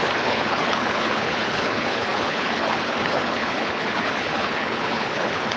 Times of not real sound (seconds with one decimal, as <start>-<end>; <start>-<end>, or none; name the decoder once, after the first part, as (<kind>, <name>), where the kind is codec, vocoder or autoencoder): 0.0-5.6 (codec, HILCodec)